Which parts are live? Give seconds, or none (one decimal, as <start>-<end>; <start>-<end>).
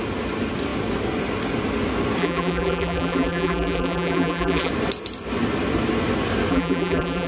0.0-2.2; 4.7-6.5